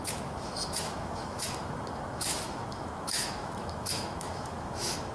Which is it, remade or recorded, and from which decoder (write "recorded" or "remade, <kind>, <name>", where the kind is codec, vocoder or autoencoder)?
remade, autoencoder, DAC-VAE